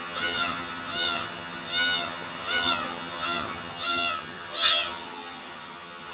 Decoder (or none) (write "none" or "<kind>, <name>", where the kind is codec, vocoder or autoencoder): vocoder, HiFi-GAN